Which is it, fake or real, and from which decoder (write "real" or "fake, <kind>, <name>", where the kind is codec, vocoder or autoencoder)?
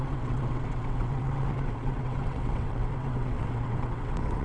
fake, vocoder, WaveNeXt